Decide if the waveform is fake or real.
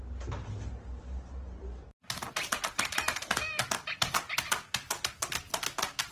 real